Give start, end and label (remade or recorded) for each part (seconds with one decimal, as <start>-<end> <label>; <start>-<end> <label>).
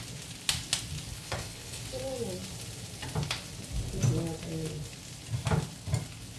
0.0-1.1 recorded; 1.1-1.8 remade; 1.8-6.4 recorded